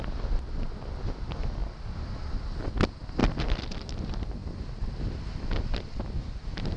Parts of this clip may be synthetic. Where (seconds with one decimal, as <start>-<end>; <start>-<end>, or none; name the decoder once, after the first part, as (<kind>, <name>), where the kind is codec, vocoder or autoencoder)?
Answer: none